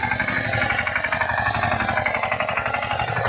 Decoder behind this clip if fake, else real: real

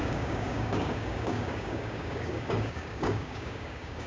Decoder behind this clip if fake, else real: fake, codec, DAC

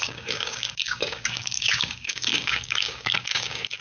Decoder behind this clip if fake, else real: fake, codec, DAC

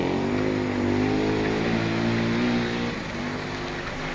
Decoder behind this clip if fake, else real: real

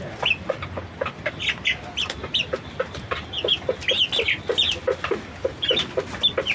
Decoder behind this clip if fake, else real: real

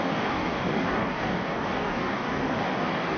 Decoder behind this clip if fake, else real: fake, codec, DAC